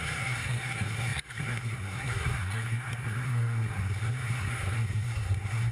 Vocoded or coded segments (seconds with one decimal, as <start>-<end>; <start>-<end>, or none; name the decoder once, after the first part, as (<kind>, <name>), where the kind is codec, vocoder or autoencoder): 0.0-5.7 (codec, SNAC)